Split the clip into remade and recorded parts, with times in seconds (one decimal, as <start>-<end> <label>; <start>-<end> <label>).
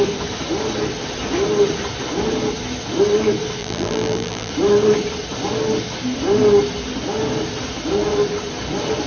0.0-3.6 recorded; 3.6-4.5 remade; 4.5-9.1 recorded